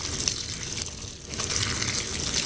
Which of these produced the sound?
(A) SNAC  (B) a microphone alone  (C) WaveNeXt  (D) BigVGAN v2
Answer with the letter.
B